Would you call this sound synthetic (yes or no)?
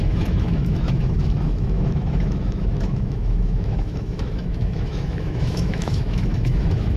yes